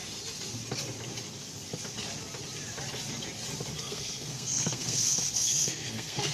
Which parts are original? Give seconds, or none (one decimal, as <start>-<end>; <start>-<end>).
0.0-3.8